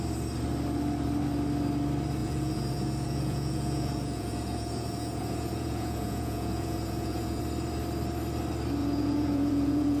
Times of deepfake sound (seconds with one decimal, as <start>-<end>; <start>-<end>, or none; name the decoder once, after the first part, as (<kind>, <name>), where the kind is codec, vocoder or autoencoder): 2.2-7.4 (vocoder, Vocos); 8.8-10.0